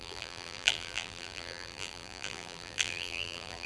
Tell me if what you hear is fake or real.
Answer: fake